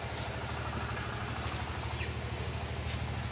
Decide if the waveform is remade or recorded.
recorded